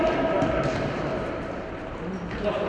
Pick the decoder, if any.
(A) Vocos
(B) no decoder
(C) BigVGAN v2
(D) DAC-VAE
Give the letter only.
B